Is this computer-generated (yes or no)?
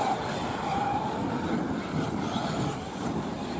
no